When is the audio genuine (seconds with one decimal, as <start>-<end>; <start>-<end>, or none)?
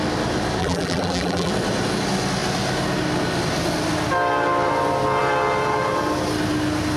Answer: 0.0-0.6; 1.5-7.0